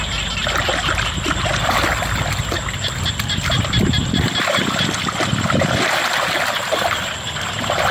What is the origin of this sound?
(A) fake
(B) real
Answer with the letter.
B